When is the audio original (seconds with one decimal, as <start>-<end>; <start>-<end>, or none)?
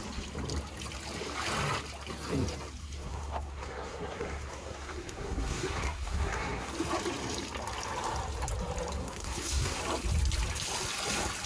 0.0-2.8; 6.7-9.0; 9.8-11.5